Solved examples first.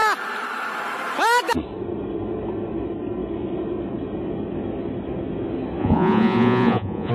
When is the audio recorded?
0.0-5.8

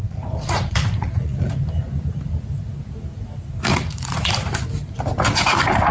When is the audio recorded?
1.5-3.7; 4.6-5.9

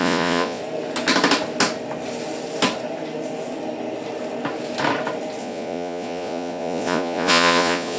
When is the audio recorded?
0.6-5.4

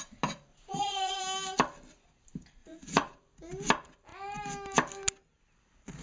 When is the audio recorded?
0.0-0.5; 1.2-2.6; 3.2-6.0